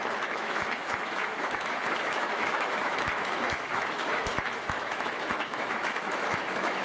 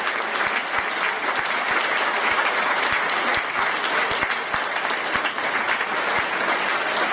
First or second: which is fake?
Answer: first